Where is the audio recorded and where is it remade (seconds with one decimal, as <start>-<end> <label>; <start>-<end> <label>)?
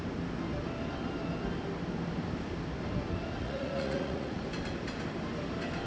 0.0-3.4 recorded; 3.4-4.4 remade; 4.4-5.9 recorded